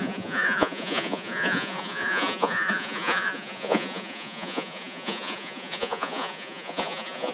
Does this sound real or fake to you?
fake